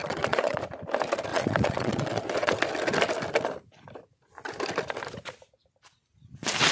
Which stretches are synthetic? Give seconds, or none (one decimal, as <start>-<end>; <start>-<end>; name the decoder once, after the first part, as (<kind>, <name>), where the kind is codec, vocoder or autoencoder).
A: 0.0-0.6 (vocoder, Vocos); 1.3-2.6